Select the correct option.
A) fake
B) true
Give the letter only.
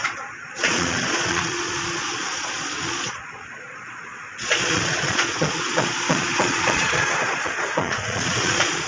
A